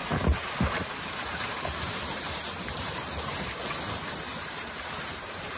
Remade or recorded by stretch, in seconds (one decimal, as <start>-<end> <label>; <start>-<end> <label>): 0.0-3.4 remade; 3.4-4.3 recorded; 4.3-5.6 remade